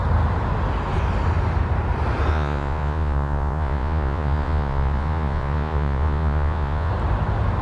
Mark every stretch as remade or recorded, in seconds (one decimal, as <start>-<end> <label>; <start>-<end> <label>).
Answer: 0.0-2.3 recorded; 2.3-6.9 remade; 6.9-7.6 recorded